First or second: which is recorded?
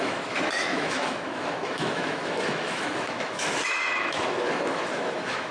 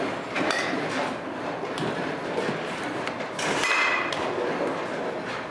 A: second